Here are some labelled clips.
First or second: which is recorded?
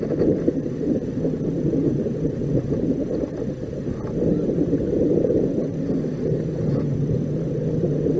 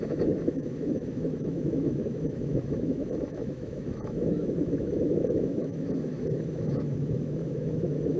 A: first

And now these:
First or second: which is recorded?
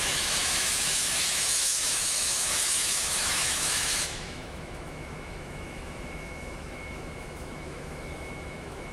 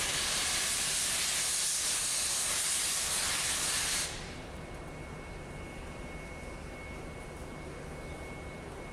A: second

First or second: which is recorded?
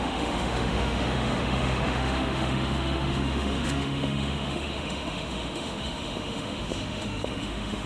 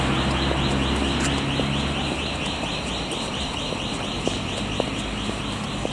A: second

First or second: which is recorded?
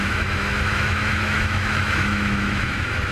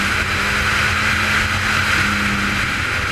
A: second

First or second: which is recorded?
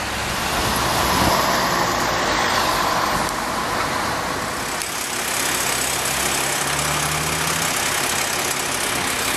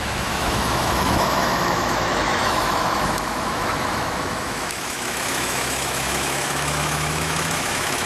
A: first